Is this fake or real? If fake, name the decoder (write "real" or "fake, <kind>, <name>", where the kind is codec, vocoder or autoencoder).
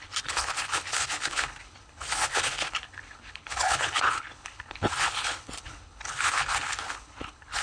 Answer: fake, codec, HILCodec